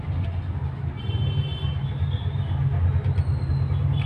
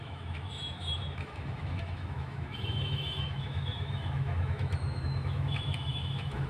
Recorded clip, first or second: first